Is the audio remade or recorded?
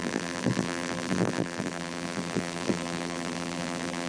remade